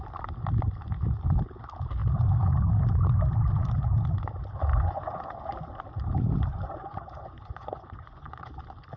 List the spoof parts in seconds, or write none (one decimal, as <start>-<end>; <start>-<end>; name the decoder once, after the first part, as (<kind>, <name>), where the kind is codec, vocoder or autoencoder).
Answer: 4.7-5.4 (vocoder, Vocos); 6.8-8.6